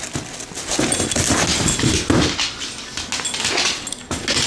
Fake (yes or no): no